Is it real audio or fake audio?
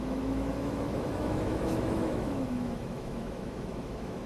fake